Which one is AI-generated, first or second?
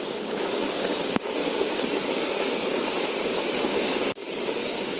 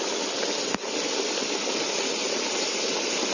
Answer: first